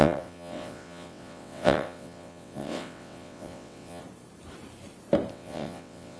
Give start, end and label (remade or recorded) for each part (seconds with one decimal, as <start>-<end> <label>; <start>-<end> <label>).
0.0-4.0 remade; 4.0-5.3 recorded; 5.3-6.2 remade